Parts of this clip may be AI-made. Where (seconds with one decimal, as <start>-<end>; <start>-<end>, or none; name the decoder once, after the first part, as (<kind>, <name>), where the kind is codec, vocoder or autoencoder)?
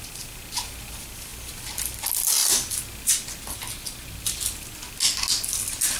none